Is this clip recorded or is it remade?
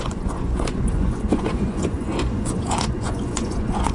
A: remade